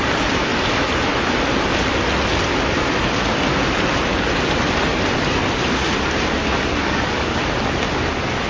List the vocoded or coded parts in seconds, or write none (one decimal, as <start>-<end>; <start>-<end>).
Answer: 6.8-7.4